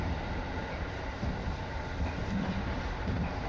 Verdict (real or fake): fake